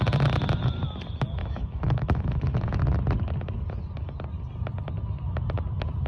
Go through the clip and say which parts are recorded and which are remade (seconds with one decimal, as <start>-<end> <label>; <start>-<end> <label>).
0.0-1.4 recorded; 1.4-2.8 remade; 2.8-6.1 recorded